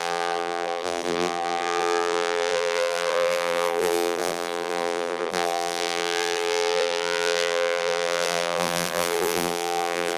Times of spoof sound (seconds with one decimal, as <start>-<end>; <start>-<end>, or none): 0.0-10.2

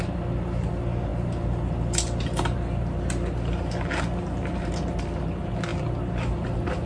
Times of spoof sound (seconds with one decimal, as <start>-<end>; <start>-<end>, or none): none

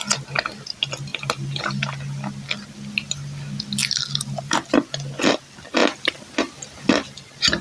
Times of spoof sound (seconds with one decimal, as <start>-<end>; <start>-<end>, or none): 1.1-1.6; 5.8-6.9

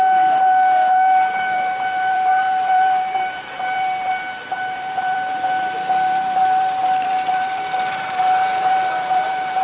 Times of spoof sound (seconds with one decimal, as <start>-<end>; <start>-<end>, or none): 0.0-9.6

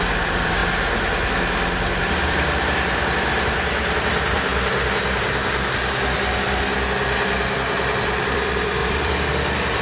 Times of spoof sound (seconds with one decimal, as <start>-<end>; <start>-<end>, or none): 0.0-0.6; 2.2-4.5; 8.2-9.8

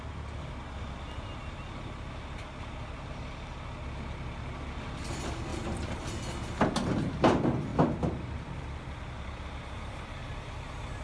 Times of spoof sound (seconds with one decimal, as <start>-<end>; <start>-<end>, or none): 7.7-8.8

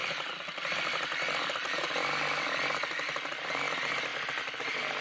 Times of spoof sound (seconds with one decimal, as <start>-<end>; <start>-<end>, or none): none

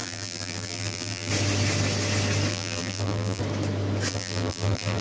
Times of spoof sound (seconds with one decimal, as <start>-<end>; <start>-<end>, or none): 0.0-1.3; 2.5-3.4; 4.1-5.0